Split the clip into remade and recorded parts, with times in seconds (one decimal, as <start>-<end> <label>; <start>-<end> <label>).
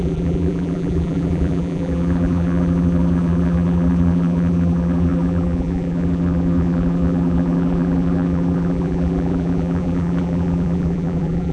0.0-11.5 remade